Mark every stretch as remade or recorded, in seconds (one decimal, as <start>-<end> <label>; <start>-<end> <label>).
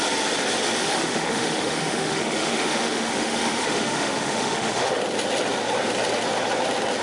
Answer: 0.0-0.8 recorded; 0.8-5.0 remade; 5.0-7.0 recorded